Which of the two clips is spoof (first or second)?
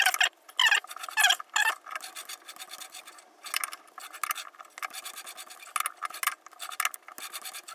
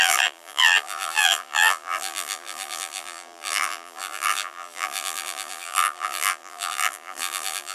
second